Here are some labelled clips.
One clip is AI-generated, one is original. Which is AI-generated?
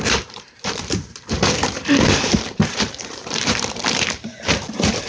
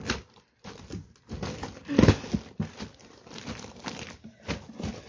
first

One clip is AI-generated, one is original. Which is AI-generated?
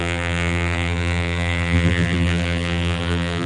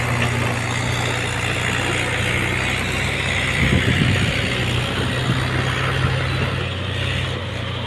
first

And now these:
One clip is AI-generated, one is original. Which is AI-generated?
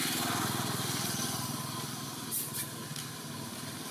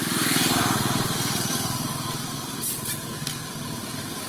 second